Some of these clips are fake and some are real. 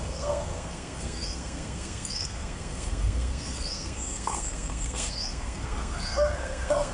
fake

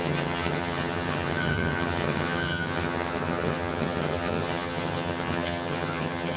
fake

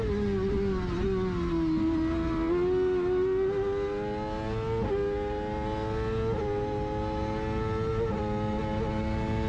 real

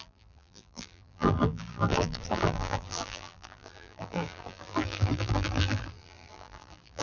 fake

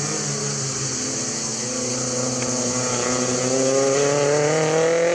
real